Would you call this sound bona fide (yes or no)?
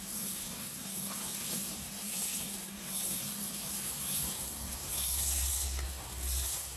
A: no